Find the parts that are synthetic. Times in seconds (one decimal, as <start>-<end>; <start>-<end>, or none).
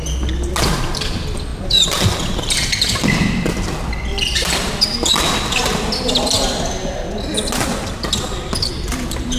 none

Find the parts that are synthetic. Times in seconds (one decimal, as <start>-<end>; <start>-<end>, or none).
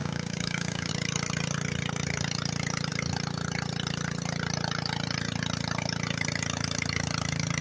0.0-0.9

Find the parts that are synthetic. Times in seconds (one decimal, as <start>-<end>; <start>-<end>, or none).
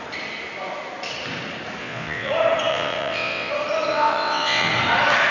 1.8-2.3; 2.7-3.5; 3.9-4.7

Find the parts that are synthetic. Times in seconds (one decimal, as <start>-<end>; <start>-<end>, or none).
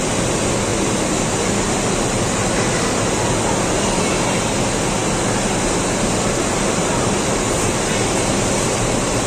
none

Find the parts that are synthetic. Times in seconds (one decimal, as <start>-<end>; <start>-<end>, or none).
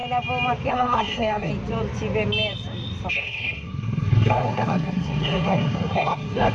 0.7-1.5; 3.1-6.5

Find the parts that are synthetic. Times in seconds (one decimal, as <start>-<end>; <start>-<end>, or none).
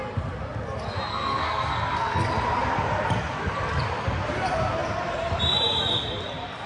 1.1-2.3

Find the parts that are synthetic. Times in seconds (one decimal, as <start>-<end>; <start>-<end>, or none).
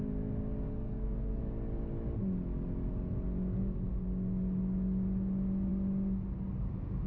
0.7-1.4